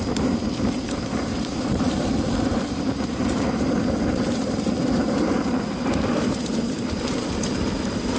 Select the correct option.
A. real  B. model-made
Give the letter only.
B